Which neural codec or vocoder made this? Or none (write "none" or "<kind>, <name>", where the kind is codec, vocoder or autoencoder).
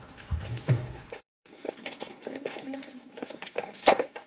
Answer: codec, SNAC